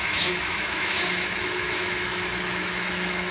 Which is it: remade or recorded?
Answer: remade